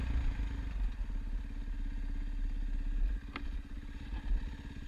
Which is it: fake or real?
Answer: real